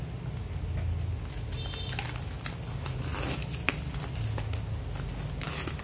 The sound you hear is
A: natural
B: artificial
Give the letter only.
A